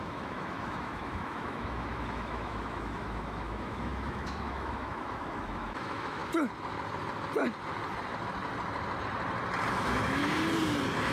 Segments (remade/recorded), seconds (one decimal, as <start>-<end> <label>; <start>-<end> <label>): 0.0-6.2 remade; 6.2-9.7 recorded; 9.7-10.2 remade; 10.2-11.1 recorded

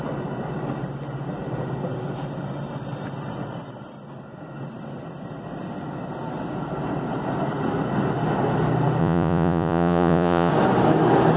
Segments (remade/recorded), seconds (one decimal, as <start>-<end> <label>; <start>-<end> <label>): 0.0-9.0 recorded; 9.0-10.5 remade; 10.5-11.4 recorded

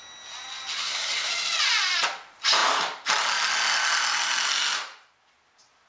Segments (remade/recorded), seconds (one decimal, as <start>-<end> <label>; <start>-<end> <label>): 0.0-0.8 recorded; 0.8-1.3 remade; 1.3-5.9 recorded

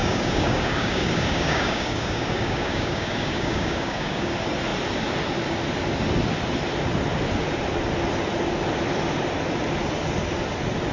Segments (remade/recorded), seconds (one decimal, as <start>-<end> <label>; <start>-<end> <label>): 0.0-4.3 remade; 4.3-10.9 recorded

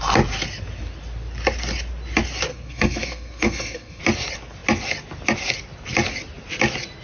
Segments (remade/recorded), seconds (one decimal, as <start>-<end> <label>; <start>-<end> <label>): 0.0-2.5 recorded; 2.5-4.0 remade; 4.0-7.0 recorded